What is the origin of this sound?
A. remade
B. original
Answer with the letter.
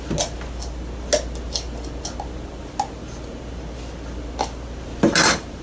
B